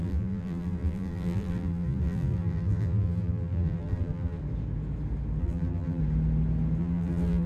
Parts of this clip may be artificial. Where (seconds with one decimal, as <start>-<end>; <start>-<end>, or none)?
0.0-4.4; 5.4-6.0; 6.8-7.5